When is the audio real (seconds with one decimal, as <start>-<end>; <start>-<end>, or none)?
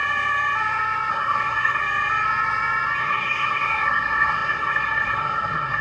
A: 0.0-1.1; 1.8-3.0